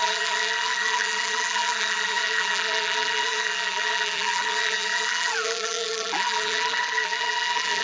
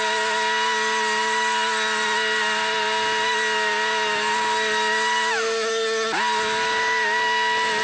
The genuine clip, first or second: second